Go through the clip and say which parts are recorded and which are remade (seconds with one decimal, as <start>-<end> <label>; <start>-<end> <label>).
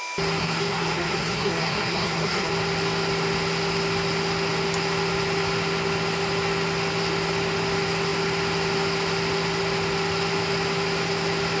0.0-0.4 recorded; 0.4-2.5 remade; 2.5-11.6 recorded